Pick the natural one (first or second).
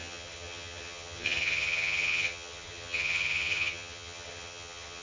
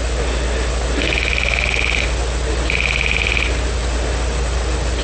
second